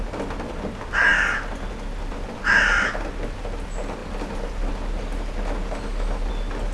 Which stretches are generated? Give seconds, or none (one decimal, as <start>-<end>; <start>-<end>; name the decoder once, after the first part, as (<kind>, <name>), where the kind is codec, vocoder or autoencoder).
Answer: none